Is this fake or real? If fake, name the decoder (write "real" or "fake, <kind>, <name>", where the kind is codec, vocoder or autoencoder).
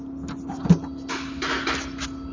real